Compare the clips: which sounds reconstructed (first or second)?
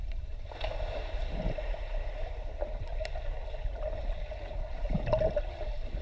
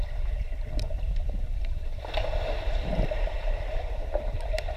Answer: second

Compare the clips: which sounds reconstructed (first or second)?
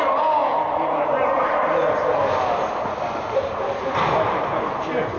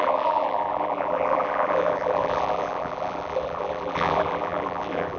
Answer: second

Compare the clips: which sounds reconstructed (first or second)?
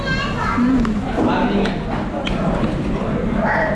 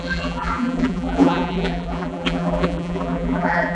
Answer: second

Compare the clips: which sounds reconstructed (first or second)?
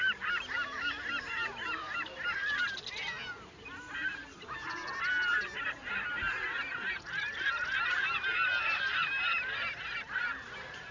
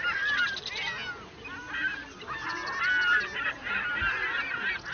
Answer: first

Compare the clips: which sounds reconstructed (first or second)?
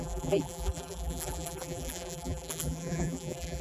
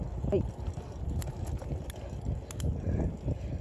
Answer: first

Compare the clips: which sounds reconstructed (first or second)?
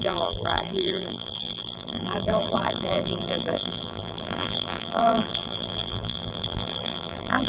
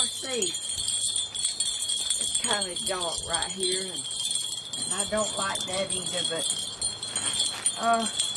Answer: first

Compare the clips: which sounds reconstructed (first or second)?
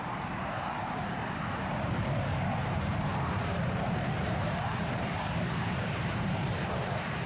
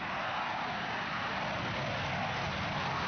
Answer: first